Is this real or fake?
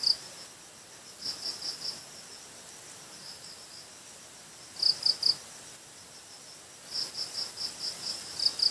real